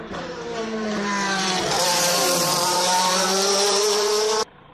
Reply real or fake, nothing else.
fake